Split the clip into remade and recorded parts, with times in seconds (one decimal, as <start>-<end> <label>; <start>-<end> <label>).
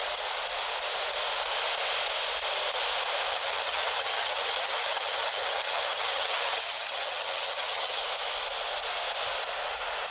0.0-3.3 recorded; 3.3-8.0 remade; 8.0-10.1 recorded